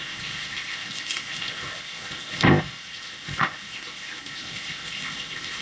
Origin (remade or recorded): remade